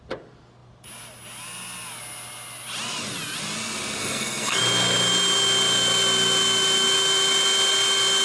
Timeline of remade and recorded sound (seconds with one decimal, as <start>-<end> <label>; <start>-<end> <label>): 0.0-4.0 recorded; 4.0-4.6 remade; 4.6-8.2 recorded